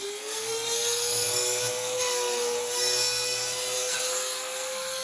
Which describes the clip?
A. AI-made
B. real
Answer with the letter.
A